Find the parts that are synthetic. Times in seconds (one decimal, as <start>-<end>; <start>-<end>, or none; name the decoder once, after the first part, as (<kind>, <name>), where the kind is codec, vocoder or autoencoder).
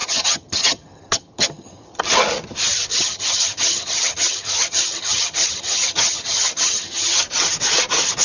0.0-2.0 (vocoder, HiFi-GAN); 2.9-7.2